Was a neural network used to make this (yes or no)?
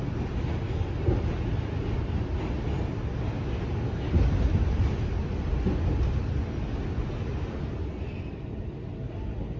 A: no